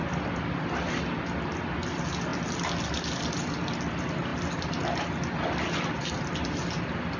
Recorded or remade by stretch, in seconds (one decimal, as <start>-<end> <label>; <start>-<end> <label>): 0.0-7.2 recorded